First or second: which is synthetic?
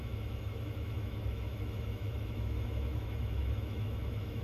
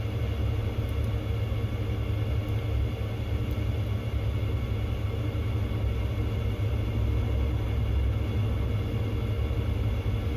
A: first